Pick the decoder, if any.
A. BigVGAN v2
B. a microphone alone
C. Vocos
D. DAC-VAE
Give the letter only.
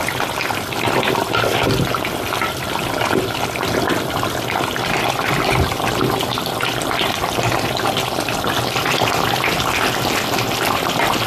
B